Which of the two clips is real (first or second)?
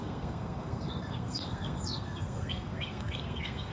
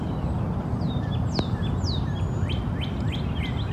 second